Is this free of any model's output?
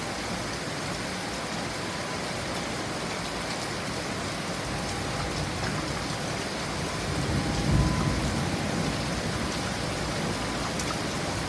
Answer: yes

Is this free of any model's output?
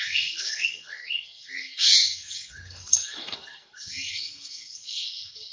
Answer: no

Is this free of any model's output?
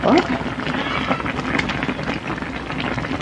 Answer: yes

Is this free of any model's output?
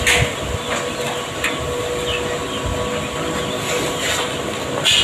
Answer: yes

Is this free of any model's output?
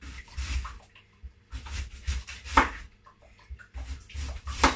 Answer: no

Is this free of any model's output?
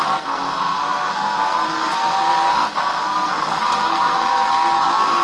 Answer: no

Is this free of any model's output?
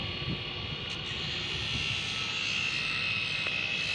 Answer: yes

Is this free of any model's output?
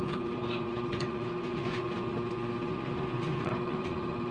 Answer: no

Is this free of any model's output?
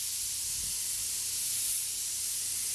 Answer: yes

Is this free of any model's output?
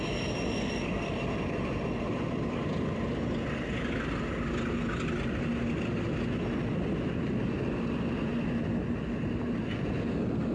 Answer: yes